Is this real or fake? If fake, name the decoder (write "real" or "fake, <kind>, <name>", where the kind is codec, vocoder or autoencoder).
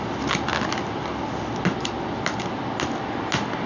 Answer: real